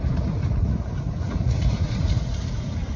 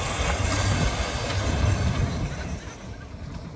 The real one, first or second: second